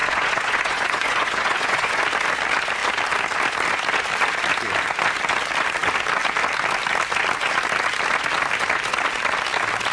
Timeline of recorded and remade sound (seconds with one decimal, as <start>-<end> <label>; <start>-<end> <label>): 0.0-2.0 remade; 2.0-9.9 recorded